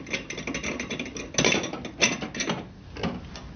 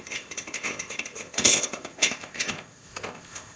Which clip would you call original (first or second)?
first